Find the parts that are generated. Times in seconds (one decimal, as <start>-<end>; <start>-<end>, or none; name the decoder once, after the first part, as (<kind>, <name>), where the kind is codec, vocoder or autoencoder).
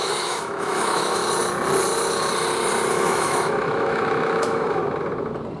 0.0-1.2 (autoencoder, DAC-VAE); 2.9-4.8